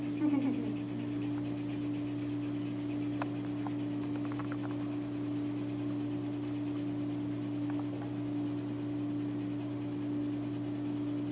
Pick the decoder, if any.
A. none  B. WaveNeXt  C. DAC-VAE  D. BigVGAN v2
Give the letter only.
A